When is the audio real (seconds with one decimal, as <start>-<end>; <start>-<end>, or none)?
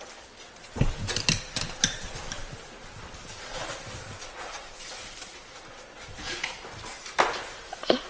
0.0-8.1